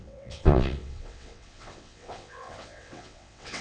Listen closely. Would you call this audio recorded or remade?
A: remade